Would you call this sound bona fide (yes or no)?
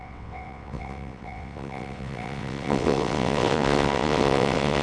no